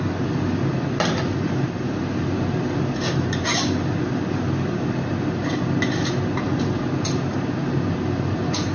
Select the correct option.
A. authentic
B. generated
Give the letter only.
A